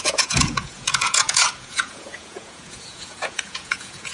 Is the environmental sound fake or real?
fake